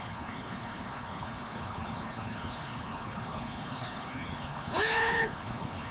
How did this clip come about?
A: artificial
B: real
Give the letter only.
A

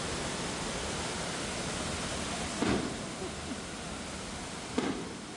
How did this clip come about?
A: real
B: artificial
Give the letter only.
A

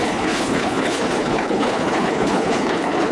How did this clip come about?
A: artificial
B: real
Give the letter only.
A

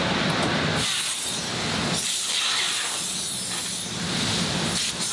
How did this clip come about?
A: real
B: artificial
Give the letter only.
A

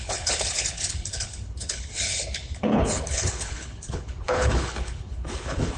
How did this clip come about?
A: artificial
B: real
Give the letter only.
A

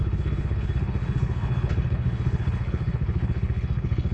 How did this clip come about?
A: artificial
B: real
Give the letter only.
A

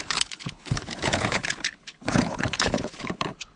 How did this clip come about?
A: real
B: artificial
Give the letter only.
B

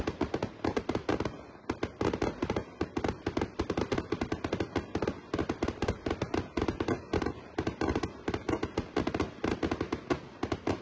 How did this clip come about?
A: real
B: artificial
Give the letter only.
A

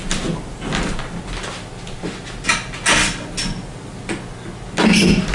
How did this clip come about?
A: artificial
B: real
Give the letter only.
B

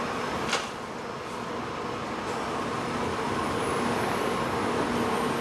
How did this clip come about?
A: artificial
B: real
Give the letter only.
B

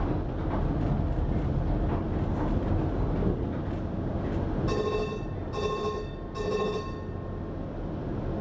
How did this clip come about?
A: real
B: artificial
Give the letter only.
A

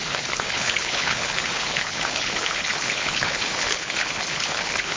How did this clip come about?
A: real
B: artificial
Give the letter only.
B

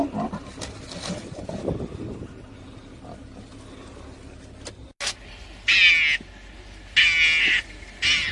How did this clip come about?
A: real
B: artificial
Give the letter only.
A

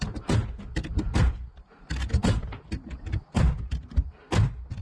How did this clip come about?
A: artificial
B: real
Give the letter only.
B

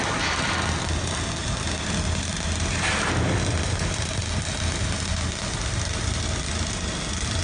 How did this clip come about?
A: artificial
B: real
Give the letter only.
B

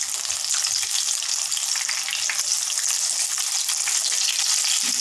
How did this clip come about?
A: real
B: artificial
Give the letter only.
A